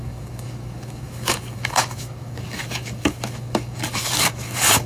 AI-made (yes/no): yes